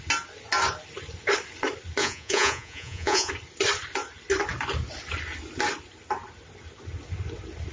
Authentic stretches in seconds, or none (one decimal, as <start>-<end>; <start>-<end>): 0.0-2.0; 3.3-7.7